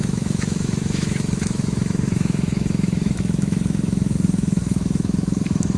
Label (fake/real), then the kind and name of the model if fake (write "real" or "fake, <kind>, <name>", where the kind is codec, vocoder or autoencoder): fake, autoencoder, DAC-VAE